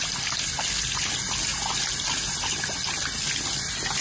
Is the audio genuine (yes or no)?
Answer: yes